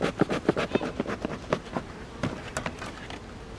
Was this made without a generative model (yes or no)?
yes